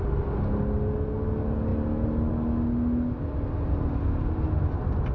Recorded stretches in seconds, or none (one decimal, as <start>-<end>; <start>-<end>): 0.0-5.1